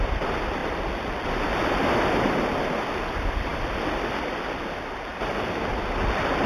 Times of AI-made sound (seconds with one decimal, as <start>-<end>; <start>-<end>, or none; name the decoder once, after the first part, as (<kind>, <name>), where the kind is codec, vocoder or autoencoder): none